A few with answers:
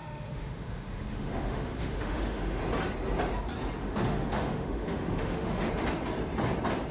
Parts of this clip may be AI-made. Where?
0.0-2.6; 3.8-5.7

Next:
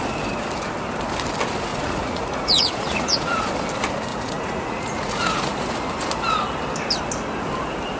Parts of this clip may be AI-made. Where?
1.7-3.5; 4.1-5.5